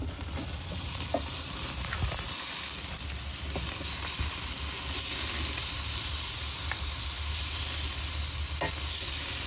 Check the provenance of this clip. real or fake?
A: real